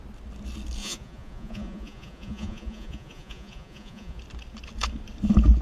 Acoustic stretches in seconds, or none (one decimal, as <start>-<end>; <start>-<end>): 0.0-0.8; 4.2-5.6